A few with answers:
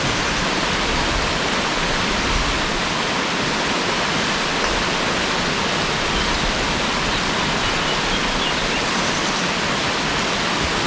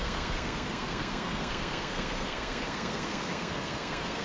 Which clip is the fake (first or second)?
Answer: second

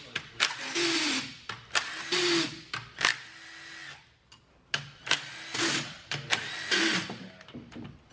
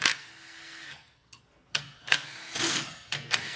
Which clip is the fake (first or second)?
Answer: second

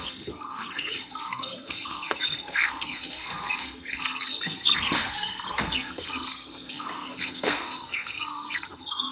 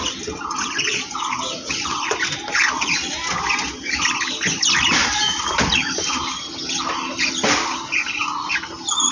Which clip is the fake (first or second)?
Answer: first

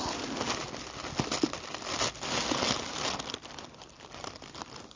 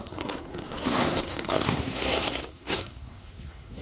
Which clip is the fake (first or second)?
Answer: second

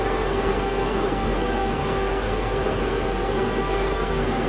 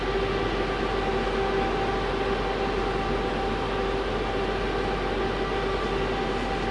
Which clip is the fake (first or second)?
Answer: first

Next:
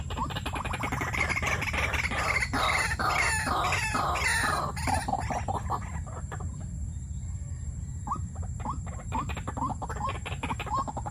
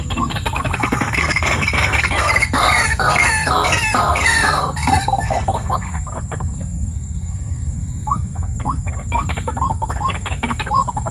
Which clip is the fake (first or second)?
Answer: second